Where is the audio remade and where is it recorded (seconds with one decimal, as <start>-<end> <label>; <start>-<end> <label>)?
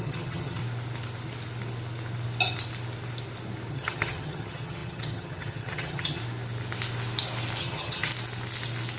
0.0-0.6 remade; 0.6-3.7 recorded; 3.7-6.2 remade; 6.2-7.6 recorded; 7.6-8.1 remade; 8.1-9.0 recorded